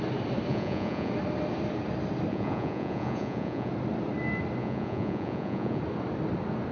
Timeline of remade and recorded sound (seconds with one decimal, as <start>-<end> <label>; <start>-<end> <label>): 0.0-0.5 recorded; 0.5-1.1 remade; 1.1-2.3 recorded; 2.3-3.7 remade; 3.7-4.6 recorded; 4.6-5.8 remade; 5.8-6.7 recorded